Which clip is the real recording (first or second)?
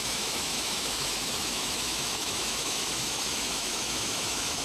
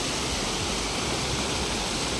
second